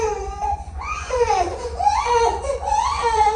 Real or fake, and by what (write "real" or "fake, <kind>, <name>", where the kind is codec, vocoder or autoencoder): fake, vocoder, Vocos